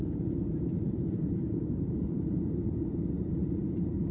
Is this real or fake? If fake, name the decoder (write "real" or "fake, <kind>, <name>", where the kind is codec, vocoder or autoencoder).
fake, vocoder, BigVGAN v2